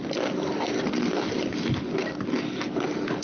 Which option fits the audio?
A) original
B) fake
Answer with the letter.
A